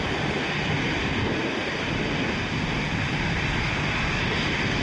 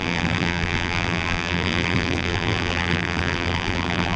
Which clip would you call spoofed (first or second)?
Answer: second